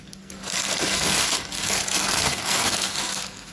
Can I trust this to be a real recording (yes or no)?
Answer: no